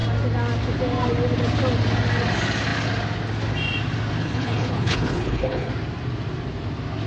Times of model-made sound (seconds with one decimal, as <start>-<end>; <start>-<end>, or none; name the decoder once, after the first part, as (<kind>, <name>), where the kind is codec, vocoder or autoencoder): 4.2-5.7 (codec, HILCodec)